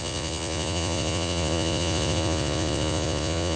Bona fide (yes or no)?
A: no